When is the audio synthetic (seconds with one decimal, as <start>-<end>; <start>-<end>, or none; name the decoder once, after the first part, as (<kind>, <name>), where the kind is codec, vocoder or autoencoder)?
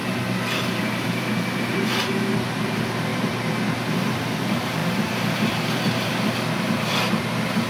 0.8-3.1 (vocoder, BigVGAN v2); 3.8-7.7